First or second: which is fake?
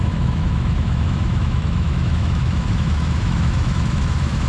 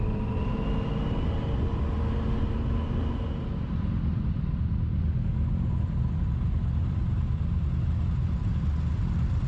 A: first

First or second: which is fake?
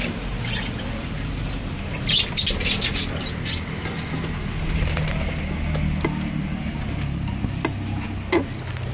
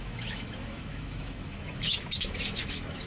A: second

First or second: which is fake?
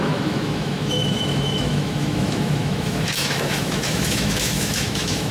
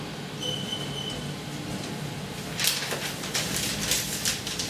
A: first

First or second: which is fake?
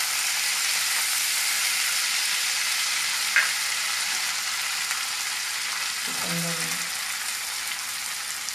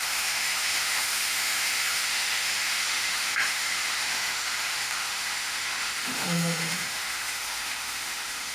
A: second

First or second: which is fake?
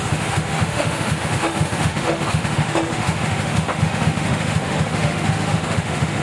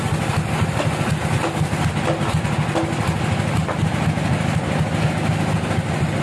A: first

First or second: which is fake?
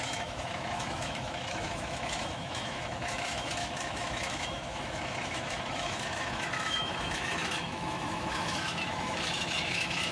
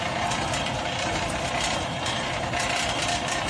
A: first